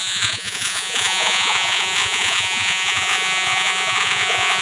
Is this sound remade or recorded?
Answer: remade